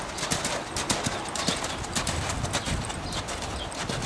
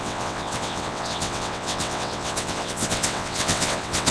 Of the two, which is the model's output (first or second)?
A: second